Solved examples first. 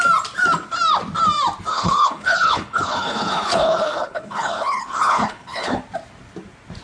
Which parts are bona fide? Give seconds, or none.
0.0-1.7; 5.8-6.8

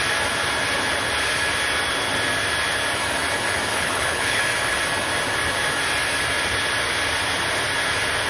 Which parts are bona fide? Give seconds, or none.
0.0-3.7; 4.4-8.3